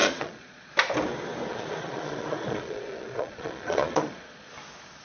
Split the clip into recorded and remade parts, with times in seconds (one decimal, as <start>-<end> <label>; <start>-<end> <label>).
0.0-0.7 remade; 0.7-1.5 recorded; 1.5-4.5 remade; 4.5-5.0 recorded